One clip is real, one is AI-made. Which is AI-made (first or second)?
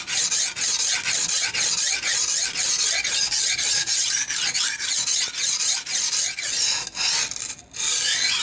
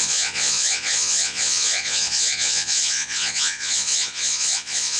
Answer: second